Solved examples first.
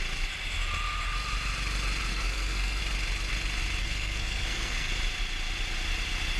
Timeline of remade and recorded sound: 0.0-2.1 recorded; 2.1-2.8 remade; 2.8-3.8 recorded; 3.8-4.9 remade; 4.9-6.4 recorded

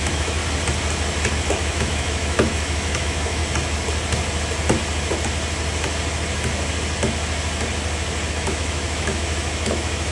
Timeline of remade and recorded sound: 0.0-0.4 remade; 0.4-1.5 recorded; 1.5-3.4 remade; 3.4-8.3 recorded; 8.3-10.1 remade

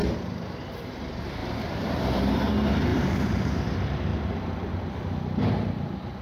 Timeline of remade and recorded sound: 0.0-0.5 remade; 0.5-1.4 recorded; 1.4-2.3 remade; 2.3-2.9 recorded; 2.9-3.6 remade; 3.6-4.1 recorded; 4.1-4.9 remade; 4.9-6.2 recorded

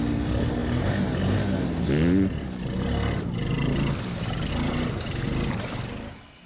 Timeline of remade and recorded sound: 0.0-6.5 recorded

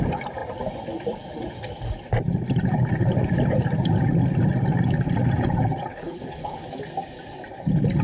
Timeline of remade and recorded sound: 0.0-5.9 recorded; 5.9-6.6 remade; 6.6-8.0 recorded

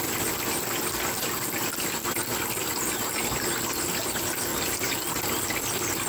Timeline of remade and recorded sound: 0.0-4.5 recorded; 4.5-5.5 remade; 5.5-6.1 recorded